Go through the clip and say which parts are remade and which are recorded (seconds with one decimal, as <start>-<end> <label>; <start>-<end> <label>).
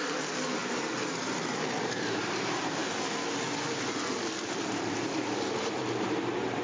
0.0-2.8 remade; 2.8-3.6 recorded; 3.6-6.6 remade